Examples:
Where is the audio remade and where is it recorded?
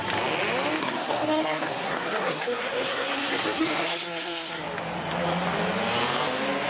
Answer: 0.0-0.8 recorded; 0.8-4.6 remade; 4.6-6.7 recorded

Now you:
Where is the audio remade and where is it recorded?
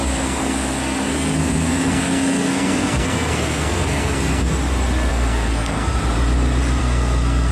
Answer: 0.0-4.5 remade; 4.5-5.1 recorded; 5.1-6.0 remade; 6.0-6.8 recorded; 6.8-7.5 remade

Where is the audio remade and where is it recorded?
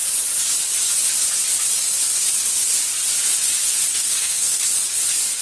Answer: 0.0-3.9 recorded; 3.9-4.6 remade; 4.6-5.4 recorded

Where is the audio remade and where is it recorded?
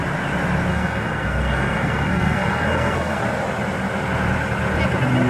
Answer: 0.0-0.7 recorded; 0.7-3.2 remade; 3.2-5.3 recorded